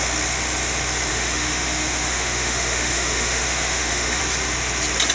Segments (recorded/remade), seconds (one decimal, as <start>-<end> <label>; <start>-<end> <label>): 0.0-1.1 recorded; 1.1-4.2 remade; 4.2-5.1 recorded